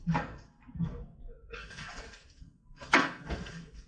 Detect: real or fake fake